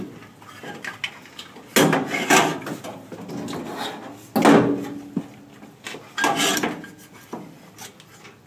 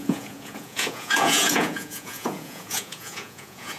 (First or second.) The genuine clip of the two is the first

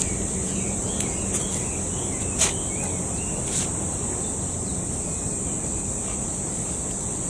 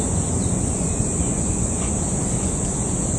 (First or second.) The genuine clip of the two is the first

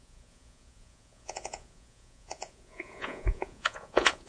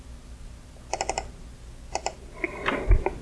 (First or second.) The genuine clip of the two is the second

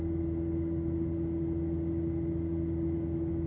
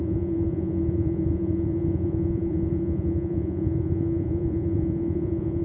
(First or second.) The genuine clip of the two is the first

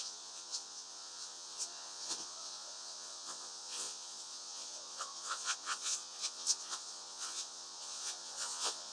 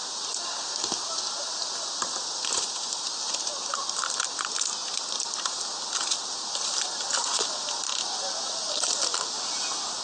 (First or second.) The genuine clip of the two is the second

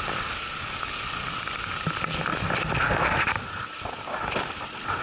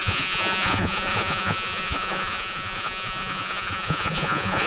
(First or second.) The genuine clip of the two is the first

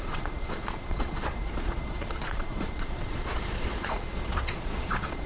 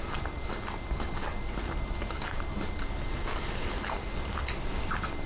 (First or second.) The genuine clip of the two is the second